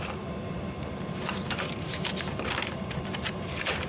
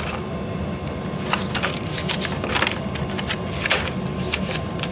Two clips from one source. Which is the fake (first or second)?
first